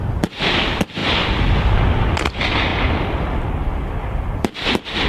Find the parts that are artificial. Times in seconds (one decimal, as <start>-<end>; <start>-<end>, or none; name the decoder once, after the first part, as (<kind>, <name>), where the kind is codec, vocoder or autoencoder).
none